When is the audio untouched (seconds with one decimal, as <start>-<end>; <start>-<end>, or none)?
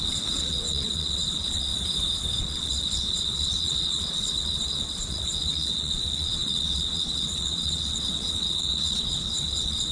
1.7-2.4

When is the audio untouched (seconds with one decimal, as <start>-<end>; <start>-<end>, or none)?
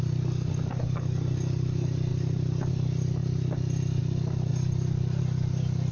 0.0-5.9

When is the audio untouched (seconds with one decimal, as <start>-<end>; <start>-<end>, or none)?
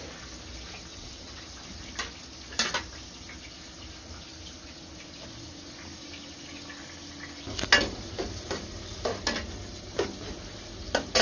0.0-0.9; 1.4-11.2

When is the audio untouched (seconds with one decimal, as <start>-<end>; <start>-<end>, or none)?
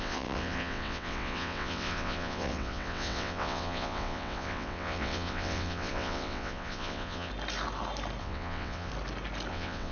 7.3-8.2; 8.9-9.5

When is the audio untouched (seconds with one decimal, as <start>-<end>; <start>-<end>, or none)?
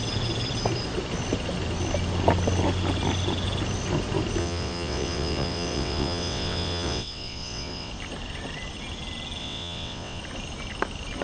0.0-4.4; 7.9-9.4; 10.2-11.2